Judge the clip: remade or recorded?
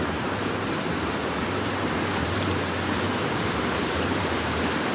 remade